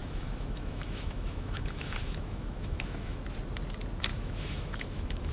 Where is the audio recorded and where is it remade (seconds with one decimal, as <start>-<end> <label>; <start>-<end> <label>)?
0.0-3.2 remade; 3.2-4.1 recorded; 4.1-5.3 remade